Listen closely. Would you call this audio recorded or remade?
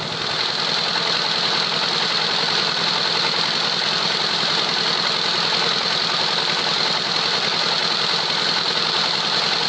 recorded